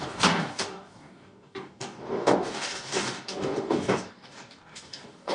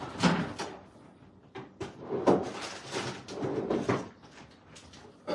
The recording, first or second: second